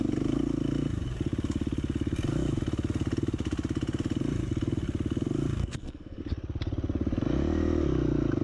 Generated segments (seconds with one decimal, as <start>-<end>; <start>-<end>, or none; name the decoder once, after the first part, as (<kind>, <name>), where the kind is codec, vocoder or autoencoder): 5.6-6.2 (codec, SNAC)